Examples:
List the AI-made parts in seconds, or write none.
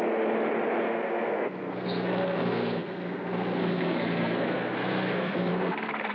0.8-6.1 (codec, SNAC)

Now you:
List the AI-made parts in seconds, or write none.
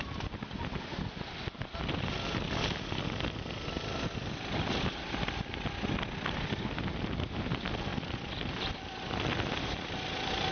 none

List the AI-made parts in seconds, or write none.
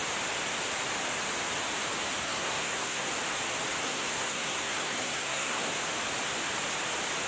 2.2-3.1 (codec, SNAC); 3.8-5.7